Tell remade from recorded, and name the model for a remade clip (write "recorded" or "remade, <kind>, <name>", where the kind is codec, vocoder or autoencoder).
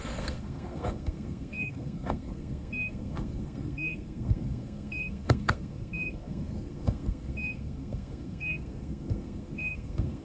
remade, codec, SNAC